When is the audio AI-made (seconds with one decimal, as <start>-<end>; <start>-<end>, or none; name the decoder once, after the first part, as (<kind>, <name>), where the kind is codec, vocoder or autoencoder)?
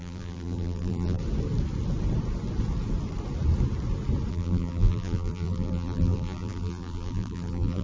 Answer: 0.0-1.2 (vocoder, BigVGAN v2); 4.3-7.8